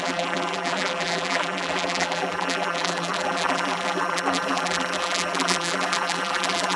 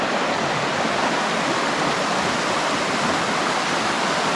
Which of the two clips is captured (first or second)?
second